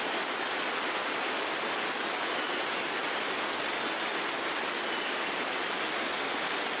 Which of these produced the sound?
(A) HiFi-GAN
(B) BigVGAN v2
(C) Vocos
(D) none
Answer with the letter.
D